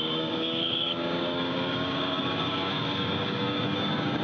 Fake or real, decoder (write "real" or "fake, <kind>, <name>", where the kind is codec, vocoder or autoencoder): fake, codec, DAC